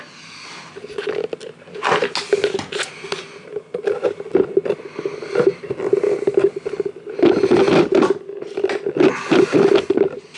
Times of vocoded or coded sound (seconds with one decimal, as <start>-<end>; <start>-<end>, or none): none